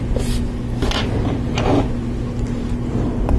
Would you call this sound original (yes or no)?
yes